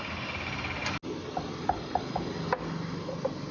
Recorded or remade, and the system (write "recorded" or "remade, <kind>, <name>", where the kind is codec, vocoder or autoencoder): recorded